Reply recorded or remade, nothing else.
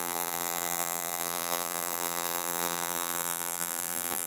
remade